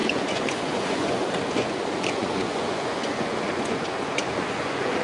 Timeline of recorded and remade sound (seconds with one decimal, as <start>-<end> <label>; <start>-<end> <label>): 0.0-5.0 remade